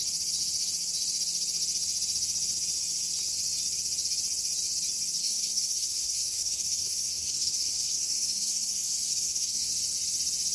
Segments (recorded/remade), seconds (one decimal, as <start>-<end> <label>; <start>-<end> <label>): 0.0-5.2 recorded; 5.2-9.7 remade; 9.7-10.5 recorded